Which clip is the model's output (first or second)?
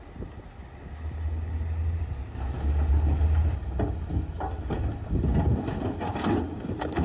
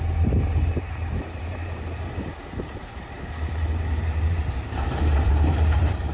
second